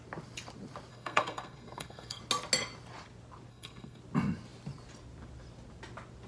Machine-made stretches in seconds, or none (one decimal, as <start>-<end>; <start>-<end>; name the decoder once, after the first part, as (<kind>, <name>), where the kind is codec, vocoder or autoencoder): 0.9-2.2 (codec, SNAC); 3.5-4.0